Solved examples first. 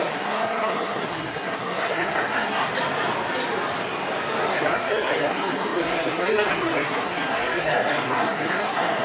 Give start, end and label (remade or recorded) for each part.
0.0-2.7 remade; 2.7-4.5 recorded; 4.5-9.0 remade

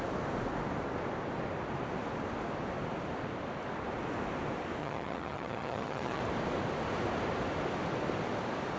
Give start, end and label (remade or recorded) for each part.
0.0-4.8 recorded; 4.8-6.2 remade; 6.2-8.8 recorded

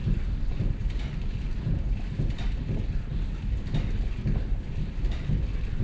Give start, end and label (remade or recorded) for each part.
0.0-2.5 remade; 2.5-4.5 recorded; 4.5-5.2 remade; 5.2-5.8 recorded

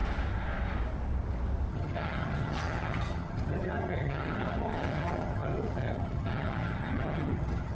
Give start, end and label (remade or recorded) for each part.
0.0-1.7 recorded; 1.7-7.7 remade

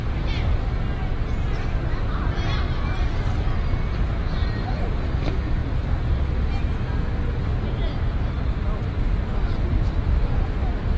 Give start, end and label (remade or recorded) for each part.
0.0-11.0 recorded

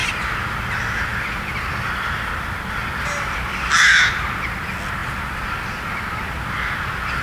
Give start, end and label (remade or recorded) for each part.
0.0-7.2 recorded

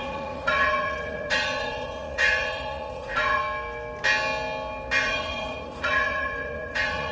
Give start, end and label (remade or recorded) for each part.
0.0-3.4 remade; 3.4-5.0 recorded; 5.0-7.1 remade